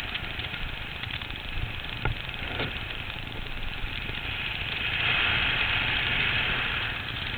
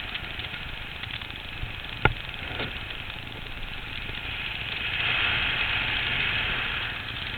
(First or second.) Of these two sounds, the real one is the second